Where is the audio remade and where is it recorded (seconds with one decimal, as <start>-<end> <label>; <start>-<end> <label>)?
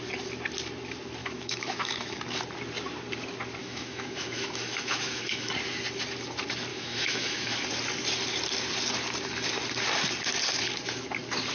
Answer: 0.0-1.2 recorded; 1.2-2.2 remade; 2.2-3.6 recorded; 3.6-5.5 remade; 5.5-6.7 recorded; 6.7-7.5 remade; 7.5-11.5 recorded